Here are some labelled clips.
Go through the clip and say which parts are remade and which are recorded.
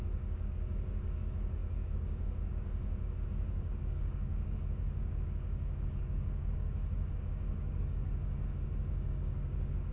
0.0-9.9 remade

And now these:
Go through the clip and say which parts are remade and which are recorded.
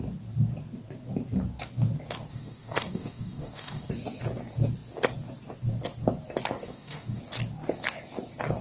0.0-2.3 recorded; 2.3-3.9 remade; 3.9-6.6 recorded; 6.6-7.2 remade; 7.2-8.6 recorded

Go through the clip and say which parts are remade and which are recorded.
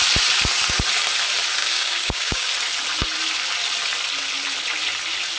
0.0-1.6 recorded; 1.6-2.5 remade; 2.5-5.4 recorded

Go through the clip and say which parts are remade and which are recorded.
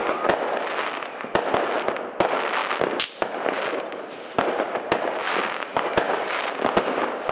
0.0-7.3 recorded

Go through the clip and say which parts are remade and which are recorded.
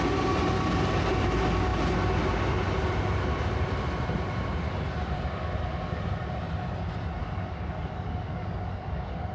0.0-7.2 recorded; 7.2-9.3 remade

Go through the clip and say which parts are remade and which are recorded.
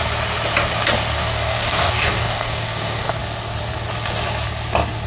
0.0-1.2 recorded; 1.2-3.2 remade; 3.2-5.1 recorded